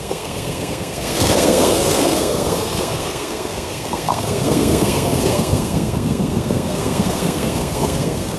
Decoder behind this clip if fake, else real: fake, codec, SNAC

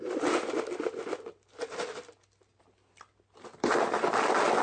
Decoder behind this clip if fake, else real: real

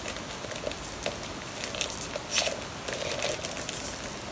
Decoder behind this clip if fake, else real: real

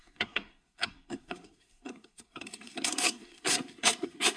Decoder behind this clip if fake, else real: fake, codec, SNAC